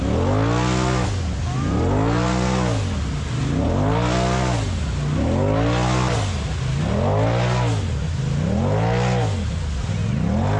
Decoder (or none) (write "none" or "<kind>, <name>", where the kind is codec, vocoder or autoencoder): none